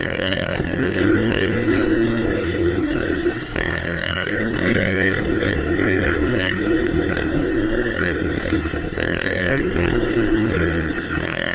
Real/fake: fake